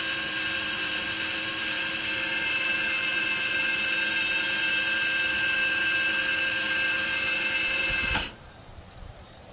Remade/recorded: remade